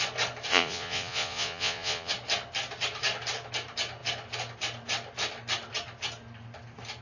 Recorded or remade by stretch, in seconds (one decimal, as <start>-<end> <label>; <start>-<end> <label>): 0.0-0.5 recorded; 0.5-2.1 remade; 2.1-7.0 recorded